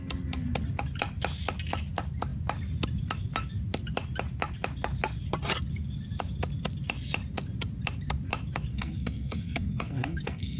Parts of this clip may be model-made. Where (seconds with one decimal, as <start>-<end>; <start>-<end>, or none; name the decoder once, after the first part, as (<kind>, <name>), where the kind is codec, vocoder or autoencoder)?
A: 8.7-10.6 (codec, SNAC)